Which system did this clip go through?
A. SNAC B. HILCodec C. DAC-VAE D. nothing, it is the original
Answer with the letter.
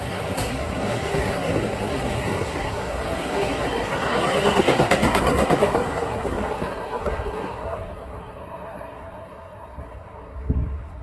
A